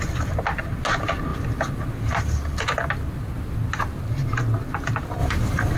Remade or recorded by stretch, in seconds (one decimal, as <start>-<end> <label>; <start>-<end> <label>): 0.0-1.3 recorded; 1.3-2.9 remade; 2.9-5.2 recorded; 5.2-5.8 remade